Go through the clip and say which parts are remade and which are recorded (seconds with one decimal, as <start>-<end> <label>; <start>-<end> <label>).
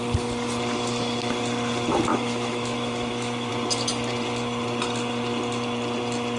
0.0-2.1 recorded; 2.1-3.5 remade; 3.5-6.4 recorded